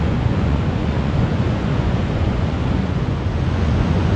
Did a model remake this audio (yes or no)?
yes